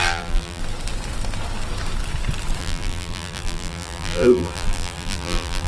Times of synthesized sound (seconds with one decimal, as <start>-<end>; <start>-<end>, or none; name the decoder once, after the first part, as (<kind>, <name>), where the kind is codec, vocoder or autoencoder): 0.0-0.6 (vocoder, BigVGAN v2); 2.6-5.7